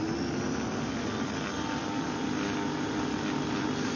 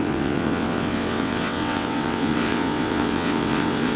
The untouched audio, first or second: first